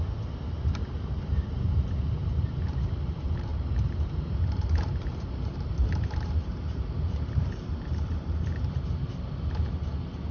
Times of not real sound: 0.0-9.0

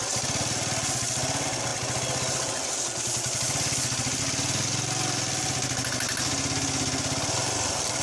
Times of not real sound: none

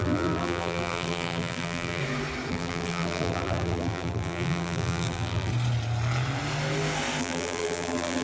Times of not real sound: 0.0-2.0; 2.5-5.5; 7.2-8.2

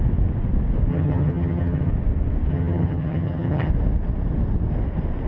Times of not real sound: 0.9-1.9; 2.5-3.7

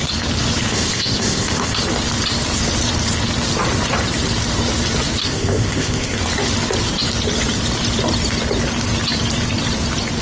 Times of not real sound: 0.7-1.8; 5.2-6.2

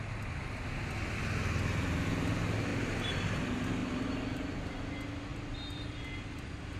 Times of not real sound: 5.3-6.8

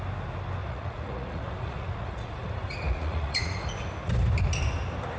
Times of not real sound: 0.6-3.7